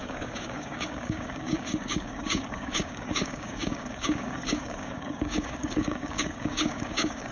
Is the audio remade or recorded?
remade